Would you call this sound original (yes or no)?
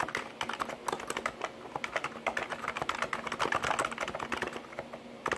yes